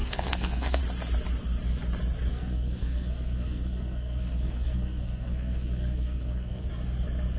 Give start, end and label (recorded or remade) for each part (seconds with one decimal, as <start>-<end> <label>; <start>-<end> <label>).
0.0-0.8 remade; 0.8-2.3 recorded; 2.3-6.7 remade; 6.7-7.4 recorded